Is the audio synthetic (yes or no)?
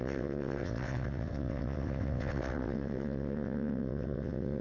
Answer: yes